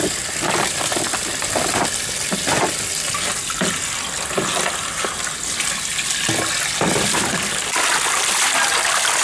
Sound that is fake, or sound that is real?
real